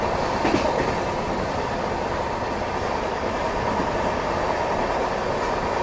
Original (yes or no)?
yes